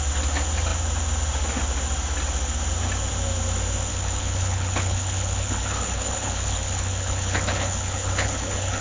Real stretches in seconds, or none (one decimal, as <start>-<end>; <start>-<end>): 0.0-3.9